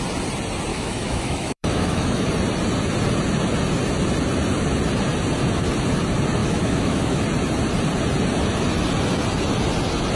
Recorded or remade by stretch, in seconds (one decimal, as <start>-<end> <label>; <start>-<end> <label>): 0.0-0.7 recorded; 0.7-2.3 remade; 2.3-6.4 recorded; 6.4-7.2 remade; 7.2-10.1 recorded